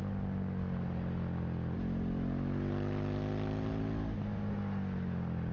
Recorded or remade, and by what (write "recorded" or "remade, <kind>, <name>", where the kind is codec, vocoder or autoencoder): recorded